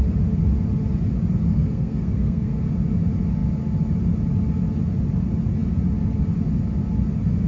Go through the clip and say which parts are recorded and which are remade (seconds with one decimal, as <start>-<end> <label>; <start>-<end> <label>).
0.0-1.5 recorded; 1.5-2.6 remade; 2.6-7.5 recorded